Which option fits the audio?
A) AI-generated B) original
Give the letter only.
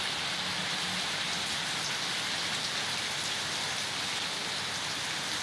B